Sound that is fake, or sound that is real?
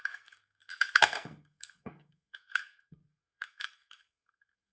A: fake